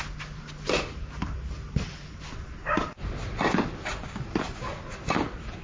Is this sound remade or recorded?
recorded